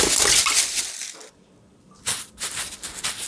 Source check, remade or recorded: recorded